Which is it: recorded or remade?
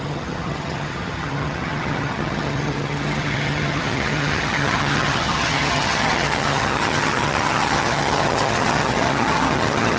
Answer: remade